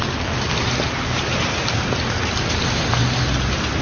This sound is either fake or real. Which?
real